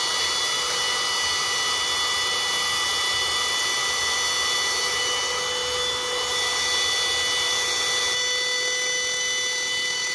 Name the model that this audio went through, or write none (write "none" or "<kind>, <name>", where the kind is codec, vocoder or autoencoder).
none